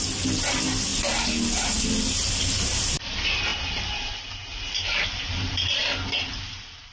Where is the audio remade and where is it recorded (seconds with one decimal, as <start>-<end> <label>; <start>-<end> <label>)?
0.0-6.9 recorded